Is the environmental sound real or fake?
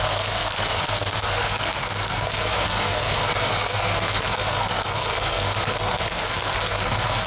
fake